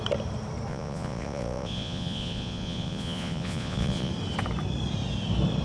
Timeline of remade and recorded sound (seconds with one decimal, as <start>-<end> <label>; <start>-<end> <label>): 0.0-0.7 recorded; 0.7-4.1 remade; 4.1-5.6 recorded